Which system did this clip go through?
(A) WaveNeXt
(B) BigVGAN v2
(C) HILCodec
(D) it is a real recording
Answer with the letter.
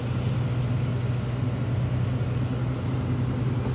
D